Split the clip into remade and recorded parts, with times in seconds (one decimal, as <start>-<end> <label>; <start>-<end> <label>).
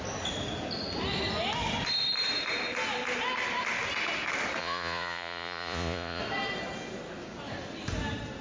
0.0-4.6 recorded; 4.6-6.2 remade; 6.2-8.4 recorded